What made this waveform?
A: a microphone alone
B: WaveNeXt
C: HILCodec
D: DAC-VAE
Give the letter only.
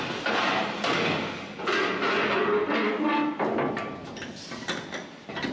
A